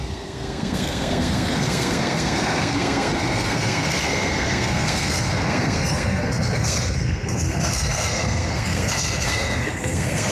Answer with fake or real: fake